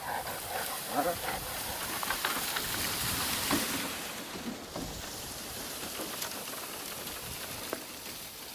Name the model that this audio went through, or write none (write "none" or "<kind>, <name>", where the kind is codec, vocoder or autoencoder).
none